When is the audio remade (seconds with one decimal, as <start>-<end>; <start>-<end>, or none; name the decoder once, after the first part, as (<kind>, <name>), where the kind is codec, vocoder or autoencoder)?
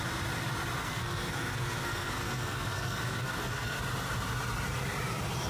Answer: 0.8-3.8 (codec, SNAC)